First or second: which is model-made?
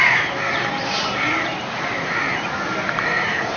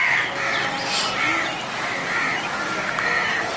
first